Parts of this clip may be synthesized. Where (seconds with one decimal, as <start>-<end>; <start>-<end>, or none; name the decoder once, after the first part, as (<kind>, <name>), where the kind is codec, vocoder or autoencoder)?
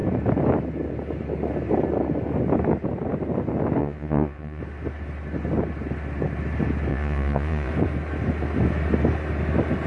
3.8-4.6 (vocoder, Vocos); 6.9-7.7